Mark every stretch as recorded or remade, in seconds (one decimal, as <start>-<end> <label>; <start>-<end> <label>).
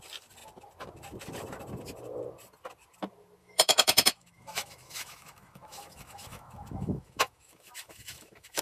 0.0-3.4 recorded; 3.4-8.6 remade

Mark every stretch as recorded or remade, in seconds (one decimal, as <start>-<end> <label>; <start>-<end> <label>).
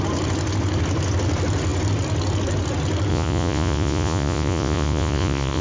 0.0-3.1 recorded; 3.1-5.6 remade